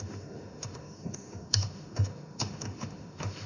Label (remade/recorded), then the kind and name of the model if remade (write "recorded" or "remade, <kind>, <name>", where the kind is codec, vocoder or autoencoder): remade, autoencoder, DAC-VAE